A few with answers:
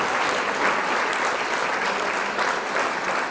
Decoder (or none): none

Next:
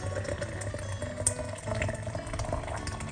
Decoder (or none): none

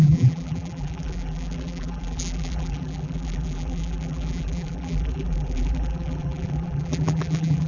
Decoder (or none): vocoder, BigVGAN v2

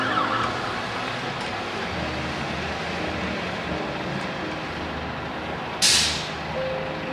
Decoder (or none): none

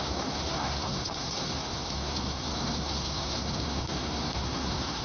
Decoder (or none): codec, SNAC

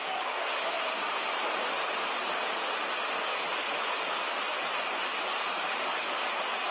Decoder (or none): none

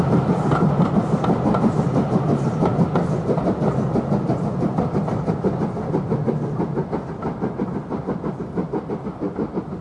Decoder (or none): none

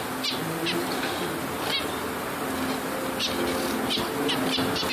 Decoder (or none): none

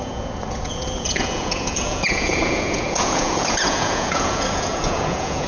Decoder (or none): vocoder, Vocos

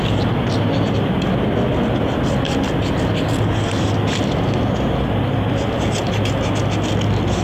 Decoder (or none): none